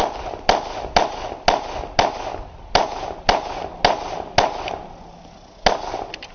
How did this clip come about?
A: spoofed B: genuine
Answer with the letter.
B